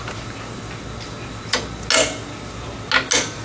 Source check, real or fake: real